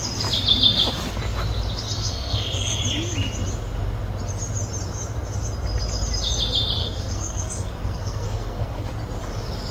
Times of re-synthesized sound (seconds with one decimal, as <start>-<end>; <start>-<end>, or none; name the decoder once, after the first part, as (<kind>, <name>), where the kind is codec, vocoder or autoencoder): 2.0-2.8 (codec, SNAC); 6.8-8.9